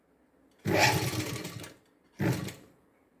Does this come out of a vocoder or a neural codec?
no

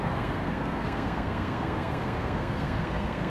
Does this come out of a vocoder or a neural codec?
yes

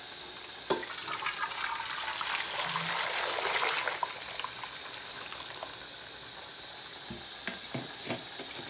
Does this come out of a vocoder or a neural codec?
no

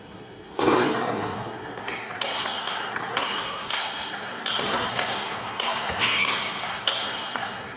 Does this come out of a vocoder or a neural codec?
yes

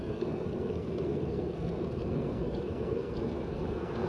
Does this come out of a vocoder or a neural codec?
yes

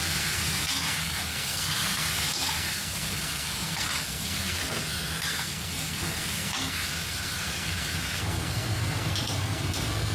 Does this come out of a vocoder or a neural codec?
yes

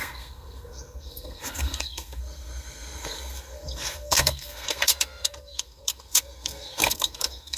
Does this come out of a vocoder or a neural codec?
yes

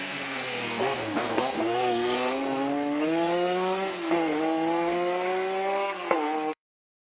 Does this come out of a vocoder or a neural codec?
yes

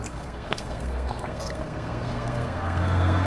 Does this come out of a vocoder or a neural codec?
yes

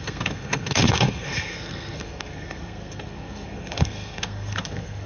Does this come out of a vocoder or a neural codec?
yes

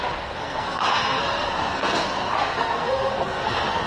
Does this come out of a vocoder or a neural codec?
yes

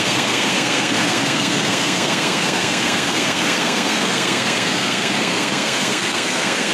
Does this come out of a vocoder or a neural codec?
yes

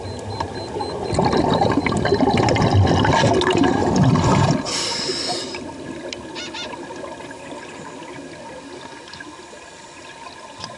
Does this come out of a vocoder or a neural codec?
no